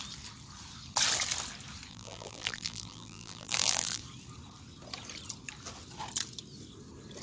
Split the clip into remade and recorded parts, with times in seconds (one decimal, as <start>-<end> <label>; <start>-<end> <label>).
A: 0.0-1.9 recorded; 1.9-4.0 remade; 4.0-7.2 recorded